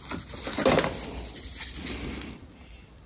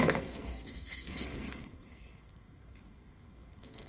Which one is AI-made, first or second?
second